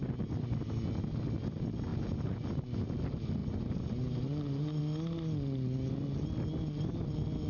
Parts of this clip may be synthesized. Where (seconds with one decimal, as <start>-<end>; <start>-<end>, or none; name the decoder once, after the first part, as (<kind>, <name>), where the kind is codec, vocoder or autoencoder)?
1.9-2.6 (vocoder, BigVGAN v2); 3.4-4.8